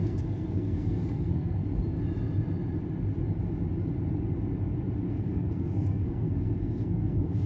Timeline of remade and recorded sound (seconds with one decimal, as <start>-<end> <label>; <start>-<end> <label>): 0.0-1.6 remade; 1.6-5.1 recorded; 5.1-7.5 remade